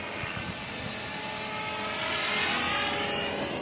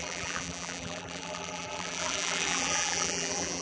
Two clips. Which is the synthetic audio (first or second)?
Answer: second